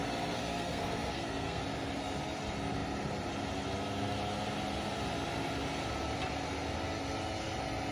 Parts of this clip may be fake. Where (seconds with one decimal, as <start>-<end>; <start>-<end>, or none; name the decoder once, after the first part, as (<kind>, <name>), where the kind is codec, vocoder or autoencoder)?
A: 0.0-1.6 (codec, SNAC)